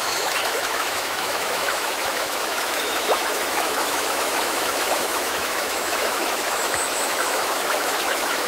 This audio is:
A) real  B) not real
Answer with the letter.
B